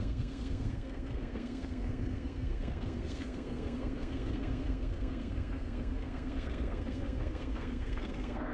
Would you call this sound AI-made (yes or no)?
yes